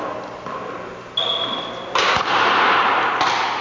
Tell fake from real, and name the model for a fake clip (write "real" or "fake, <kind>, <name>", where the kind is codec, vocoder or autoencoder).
real